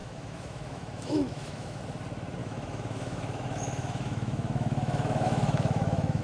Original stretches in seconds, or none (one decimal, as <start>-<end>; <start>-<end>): 1.8-2.4